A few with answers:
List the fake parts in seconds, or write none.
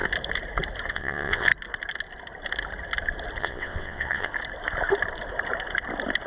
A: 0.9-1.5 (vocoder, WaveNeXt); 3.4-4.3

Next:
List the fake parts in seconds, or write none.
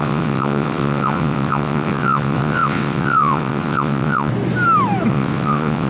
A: 0.0-4.3 (vocoder, WaveNeXt); 5.1-5.9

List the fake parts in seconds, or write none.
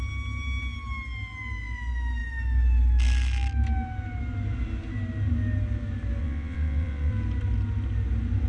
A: 6.2-7.1 (vocoder, WaveNeXt)